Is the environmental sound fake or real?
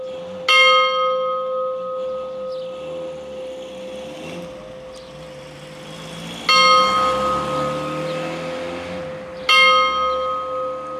real